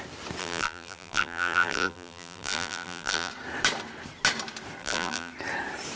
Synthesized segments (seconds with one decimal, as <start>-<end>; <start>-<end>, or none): 0.4-3.3; 4.8-5.3